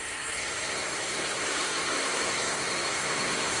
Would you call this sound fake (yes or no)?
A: yes